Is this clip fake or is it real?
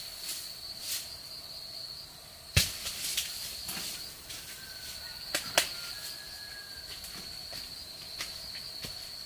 real